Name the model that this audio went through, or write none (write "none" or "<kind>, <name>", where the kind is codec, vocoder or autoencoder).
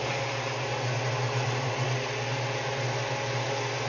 none